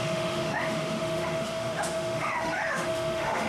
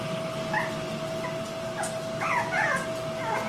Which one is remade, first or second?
first